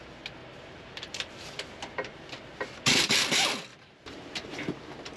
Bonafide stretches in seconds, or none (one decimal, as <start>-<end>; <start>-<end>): 0.0-0.4; 1.4-3.7; 4.7-5.2

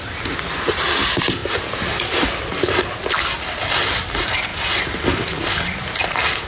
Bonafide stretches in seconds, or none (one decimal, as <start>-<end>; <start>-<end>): 0.0-6.5

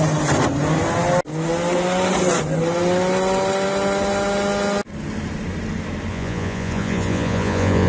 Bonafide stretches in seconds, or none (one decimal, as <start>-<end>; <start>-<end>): 0.0-6.1

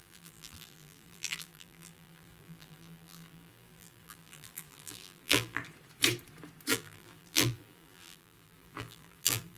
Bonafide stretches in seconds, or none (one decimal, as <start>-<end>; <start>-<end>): 5.6-6.7

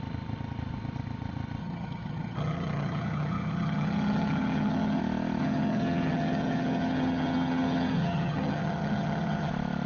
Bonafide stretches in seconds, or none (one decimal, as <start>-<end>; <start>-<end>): 0.0-1.6; 5.0-5.4; 9.5-9.9